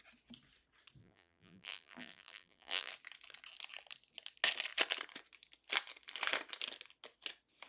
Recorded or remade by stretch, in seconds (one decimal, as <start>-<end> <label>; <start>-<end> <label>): 0.0-1.0 recorded; 1.0-2.9 remade; 2.9-7.7 recorded